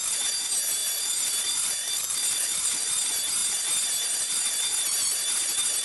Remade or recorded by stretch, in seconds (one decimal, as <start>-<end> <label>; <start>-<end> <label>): 0.0-0.8 recorded; 0.8-2.9 remade; 2.9-5.8 recorded